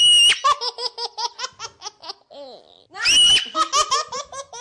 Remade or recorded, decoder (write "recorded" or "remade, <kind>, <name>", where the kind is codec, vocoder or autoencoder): recorded